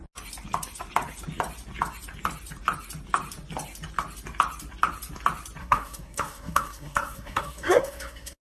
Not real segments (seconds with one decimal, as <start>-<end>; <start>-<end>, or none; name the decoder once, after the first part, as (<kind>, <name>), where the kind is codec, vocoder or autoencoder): 5.6-8.4 (codec, SNAC)